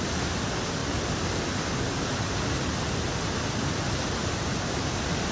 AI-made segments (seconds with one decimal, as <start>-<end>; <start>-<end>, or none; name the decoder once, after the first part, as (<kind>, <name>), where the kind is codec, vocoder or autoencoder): none